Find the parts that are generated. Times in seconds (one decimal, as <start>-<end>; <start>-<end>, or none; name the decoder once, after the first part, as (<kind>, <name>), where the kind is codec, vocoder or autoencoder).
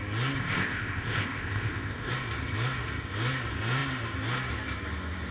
0.4-2.1 (codec, ZipCodec)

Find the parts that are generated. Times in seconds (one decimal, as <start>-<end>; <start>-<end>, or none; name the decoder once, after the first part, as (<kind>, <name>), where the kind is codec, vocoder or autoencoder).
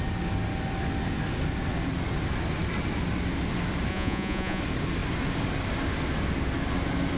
3.9-4.6 (vocoder, Vocos)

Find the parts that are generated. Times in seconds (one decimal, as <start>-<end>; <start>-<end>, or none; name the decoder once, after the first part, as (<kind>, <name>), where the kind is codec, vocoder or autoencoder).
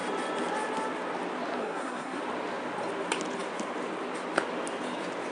1.6-2.2 (codec, SNAC)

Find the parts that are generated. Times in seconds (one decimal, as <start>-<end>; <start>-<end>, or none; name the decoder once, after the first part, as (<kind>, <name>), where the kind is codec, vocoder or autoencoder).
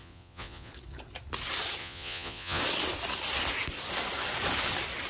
0.0-0.7 (vocoder, Vocos); 1.8-2.6